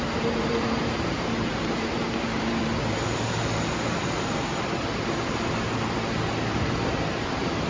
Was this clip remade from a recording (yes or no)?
yes